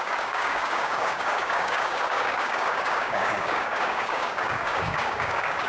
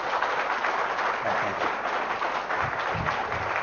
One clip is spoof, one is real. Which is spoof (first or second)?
first